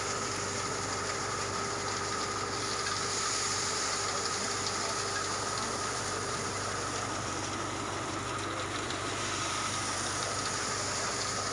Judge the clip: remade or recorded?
recorded